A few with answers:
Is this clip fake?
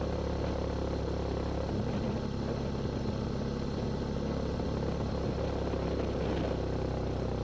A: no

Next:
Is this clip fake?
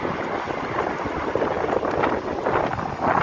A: no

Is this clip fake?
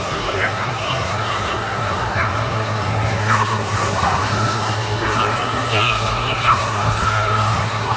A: yes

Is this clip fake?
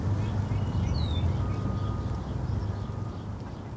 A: no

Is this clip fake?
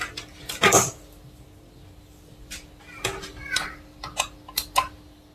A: no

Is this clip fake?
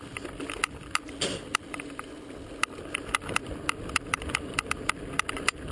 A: no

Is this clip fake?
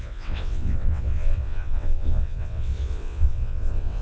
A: yes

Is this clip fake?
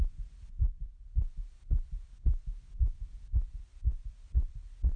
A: no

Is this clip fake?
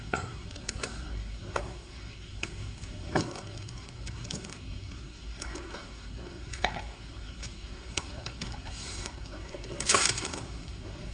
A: yes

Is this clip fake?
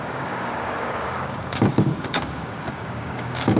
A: yes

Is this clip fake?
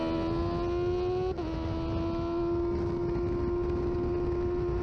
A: no